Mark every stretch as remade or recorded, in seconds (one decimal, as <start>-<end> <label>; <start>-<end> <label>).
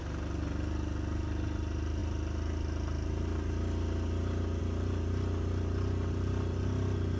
0.0-7.2 recorded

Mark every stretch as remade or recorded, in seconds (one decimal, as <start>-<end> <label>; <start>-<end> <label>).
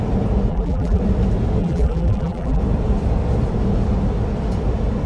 0.0-0.5 recorded; 0.5-1.0 remade; 1.0-1.6 recorded; 1.6-2.6 remade; 2.6-5.1 recorded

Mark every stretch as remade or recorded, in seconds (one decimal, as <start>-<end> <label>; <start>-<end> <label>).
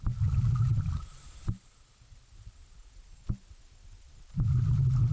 0.0-5.1 recorded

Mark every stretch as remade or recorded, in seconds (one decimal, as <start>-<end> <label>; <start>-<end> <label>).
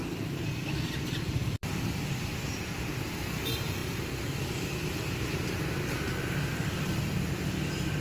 0.0-3.2 remade; 3.2-8.0 recorded